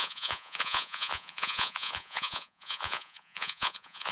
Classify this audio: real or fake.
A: fake